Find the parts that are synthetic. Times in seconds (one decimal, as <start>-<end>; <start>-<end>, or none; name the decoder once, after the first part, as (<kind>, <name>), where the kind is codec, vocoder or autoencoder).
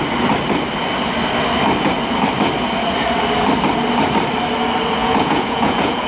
5.0-6.1 (vocoder, Vocos)